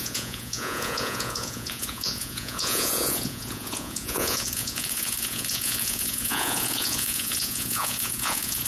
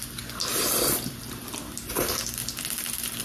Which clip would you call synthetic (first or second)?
first